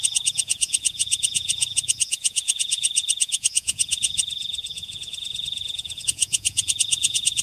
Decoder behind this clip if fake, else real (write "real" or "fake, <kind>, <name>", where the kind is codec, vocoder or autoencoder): fake, vocoder, Vocos